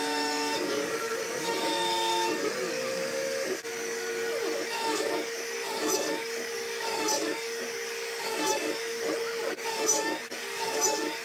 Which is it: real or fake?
fake